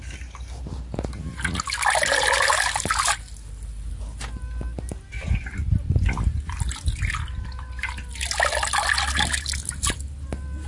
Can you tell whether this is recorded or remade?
recorded